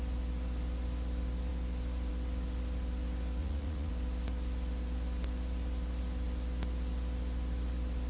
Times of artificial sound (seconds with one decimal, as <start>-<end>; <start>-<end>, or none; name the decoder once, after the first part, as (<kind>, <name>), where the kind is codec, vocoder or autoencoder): 3.4-3.9 (vocoder, Vocos)